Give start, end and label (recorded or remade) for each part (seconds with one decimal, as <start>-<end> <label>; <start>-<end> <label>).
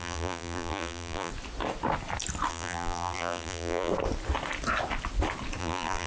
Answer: 0.0-1.3 remade; 1.3-2.5 recorded; 2.5-3.9 remade; 3.9-5.6 recorded; 5.6-6.1 remade